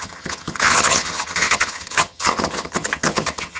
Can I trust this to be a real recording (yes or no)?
no